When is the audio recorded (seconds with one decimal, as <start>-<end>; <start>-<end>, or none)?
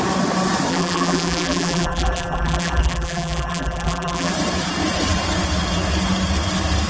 0.0-0.7; 4.3-6.9